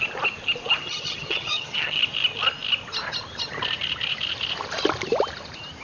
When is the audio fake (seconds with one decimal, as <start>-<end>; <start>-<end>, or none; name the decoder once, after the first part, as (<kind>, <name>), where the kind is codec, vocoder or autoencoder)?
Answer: 0.8-2.0 (vocoder, HiFi-GAN)